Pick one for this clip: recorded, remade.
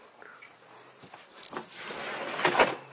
remade